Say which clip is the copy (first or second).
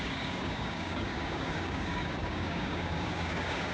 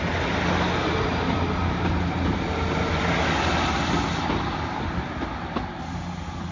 first